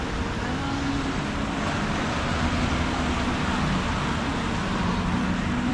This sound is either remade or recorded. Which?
recorded